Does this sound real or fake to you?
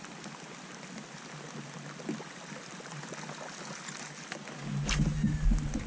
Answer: real